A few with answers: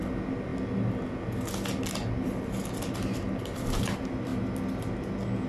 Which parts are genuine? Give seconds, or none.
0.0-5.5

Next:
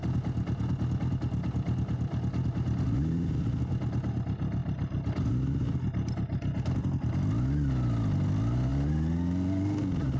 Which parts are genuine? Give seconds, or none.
0.0-10.2

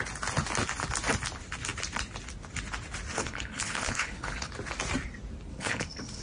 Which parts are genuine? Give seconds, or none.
0.0-3.1; 4.5-5.5

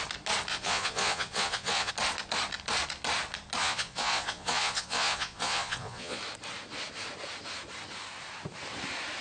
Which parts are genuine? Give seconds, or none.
0.0-0.5; 1.9-3.6; 6.2-9.2

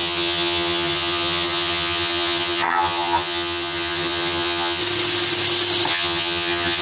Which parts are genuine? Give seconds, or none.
4.8-5.9

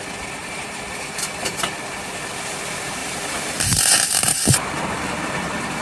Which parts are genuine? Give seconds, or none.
0.0-0.4; 1.6-3.0; 5.3-5.8